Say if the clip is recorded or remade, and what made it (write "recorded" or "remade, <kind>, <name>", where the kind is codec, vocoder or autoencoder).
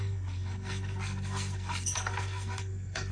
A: remade, codec, SNAC